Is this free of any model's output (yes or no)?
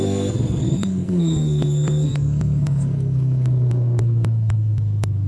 no